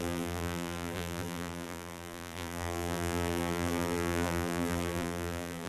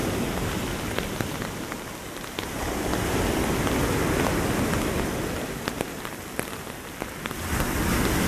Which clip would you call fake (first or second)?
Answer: first